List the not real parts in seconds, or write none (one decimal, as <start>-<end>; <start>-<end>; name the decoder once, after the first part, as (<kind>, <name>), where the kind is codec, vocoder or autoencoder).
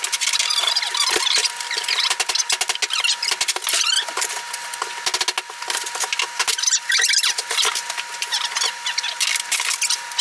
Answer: none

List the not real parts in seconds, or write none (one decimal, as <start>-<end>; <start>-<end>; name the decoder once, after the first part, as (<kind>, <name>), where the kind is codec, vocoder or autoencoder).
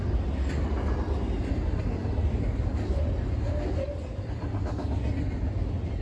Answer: none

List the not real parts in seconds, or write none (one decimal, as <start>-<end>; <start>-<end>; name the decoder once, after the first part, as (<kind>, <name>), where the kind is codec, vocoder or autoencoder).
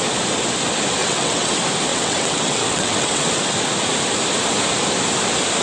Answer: 1.0-1.5 (vocoder, WaveNeXt); 1.9-3.3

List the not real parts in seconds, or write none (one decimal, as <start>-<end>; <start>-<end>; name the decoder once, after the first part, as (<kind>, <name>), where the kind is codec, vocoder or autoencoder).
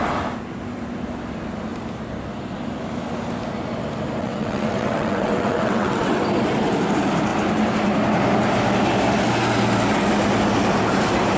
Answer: 4.2-6.2 (vocoder, WaveNeXt)